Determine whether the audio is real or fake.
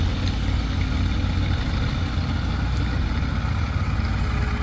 real